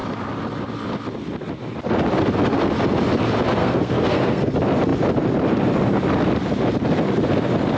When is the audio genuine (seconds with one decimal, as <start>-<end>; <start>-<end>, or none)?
0.0-3.6; 4.5-7.8